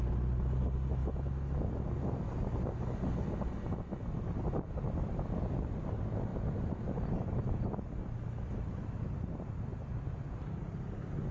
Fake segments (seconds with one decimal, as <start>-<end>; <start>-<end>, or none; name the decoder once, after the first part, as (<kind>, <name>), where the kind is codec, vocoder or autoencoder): none